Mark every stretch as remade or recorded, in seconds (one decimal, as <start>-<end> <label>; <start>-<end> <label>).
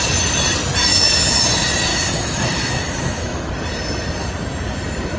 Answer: 0.0-0.9 recorded; 0.9-1.5 remade; 1.5-1.9 recorded; 1.9-3.5 remade; 3.5-5.2 recorded